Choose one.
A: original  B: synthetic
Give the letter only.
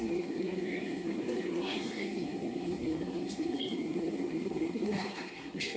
B